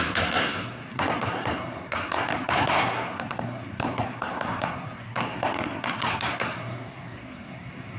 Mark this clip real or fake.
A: fake